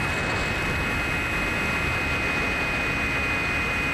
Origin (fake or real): real